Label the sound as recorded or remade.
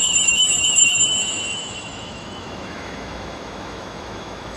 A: remade